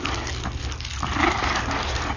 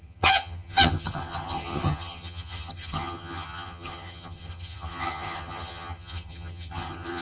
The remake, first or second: second